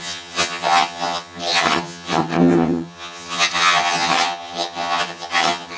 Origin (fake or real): fake